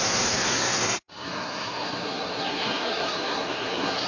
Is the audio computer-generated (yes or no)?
yes